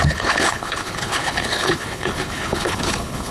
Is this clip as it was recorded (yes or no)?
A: no